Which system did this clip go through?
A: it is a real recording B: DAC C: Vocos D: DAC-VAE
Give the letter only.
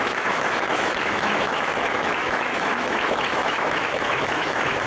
D